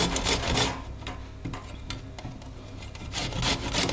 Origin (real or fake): real